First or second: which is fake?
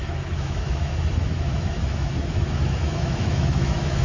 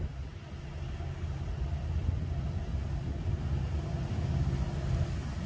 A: first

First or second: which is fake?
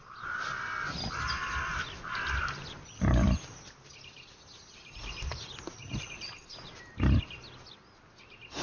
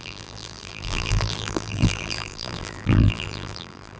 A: second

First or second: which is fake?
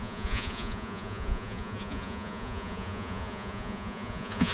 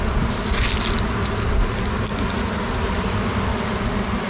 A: first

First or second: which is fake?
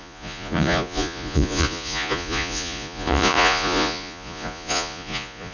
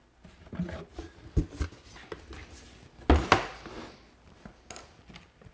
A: first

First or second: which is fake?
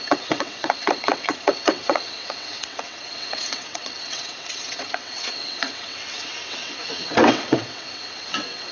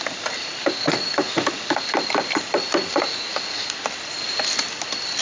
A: first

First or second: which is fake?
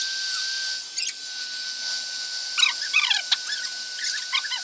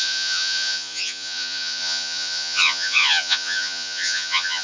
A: second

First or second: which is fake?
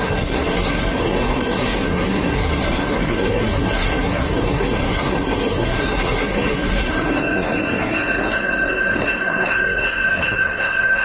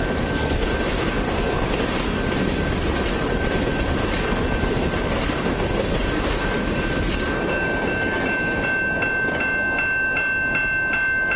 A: first